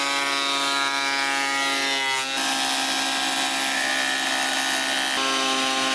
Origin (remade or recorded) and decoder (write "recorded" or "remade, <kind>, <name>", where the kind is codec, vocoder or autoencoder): recorded